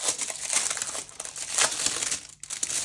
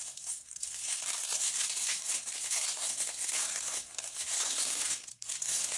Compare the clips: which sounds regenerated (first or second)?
second